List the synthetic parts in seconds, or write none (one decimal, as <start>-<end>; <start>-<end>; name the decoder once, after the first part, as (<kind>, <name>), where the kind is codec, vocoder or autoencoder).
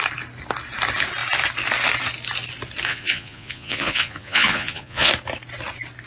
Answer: 2.9-5.1 (vocoder, Vocos)